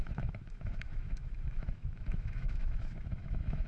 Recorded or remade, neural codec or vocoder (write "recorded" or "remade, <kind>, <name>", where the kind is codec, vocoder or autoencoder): remade, autoencoder, DAC-VAE